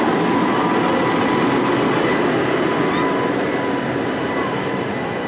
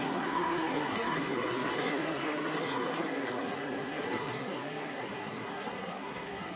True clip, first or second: first